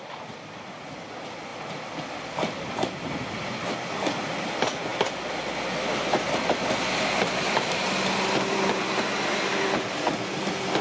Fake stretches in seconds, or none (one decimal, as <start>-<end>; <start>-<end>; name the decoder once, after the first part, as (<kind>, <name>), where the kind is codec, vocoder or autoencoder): none

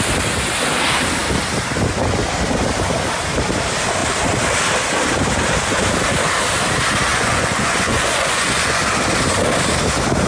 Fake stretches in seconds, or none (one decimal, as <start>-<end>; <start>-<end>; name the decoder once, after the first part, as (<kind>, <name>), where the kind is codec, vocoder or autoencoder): 7.1-8.8 (vocoder, Vocos)

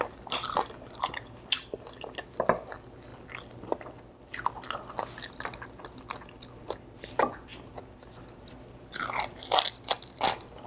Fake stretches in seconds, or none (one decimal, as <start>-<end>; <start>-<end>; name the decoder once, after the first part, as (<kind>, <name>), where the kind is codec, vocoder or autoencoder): none

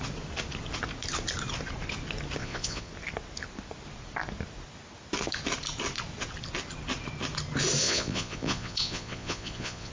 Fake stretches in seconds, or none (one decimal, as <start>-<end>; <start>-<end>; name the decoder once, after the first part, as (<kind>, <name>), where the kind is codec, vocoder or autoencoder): 2.4-2.9 (vocoder, Vocos); 7.8-9.9

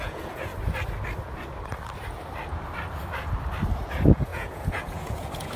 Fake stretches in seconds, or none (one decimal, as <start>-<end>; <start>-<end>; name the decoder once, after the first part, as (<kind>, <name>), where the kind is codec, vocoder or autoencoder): 0.0-0.5 (vocoder, Vocos); 3.9-5.6